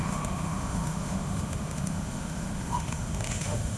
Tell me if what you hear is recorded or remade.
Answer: remade